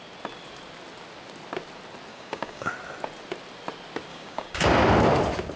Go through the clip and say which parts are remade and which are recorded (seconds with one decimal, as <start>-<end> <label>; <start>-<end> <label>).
0.0-2.1 recorded; 2.1-2.7 remade; 2.7-4.1 recorded; 4.1-4.7 remade; 4.7-5.6 recorded